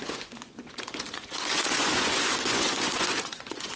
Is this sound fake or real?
fake